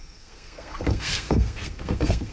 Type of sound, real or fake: fake